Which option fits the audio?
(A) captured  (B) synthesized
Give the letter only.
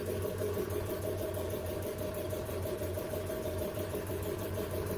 B